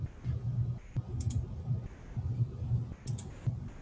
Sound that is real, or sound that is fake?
real